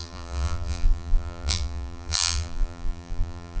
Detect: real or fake fake